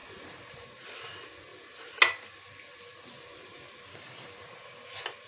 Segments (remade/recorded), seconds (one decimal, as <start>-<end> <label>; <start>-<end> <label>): 0.0-3.9 recorded; 3.9-4.4 remade; 4.4-5.3 recorded